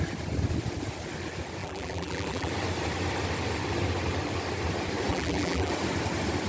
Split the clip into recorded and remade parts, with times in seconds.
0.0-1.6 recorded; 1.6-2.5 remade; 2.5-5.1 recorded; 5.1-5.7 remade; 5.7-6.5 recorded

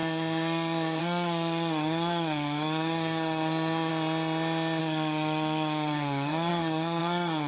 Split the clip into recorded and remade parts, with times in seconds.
0.0-3.9 remade; 3.9-4.8 recorded; 4.8-7.5 remade

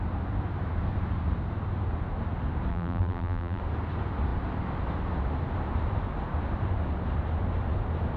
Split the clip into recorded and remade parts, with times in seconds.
0.0-2.7 recorded; 2.7-3.6 remade; 3.6-8.2 recorded

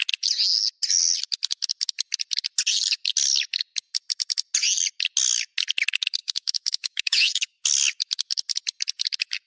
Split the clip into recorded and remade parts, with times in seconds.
0.0-6.2 recorded; 6.2-7.6 remade; 7.6-9.5 recorded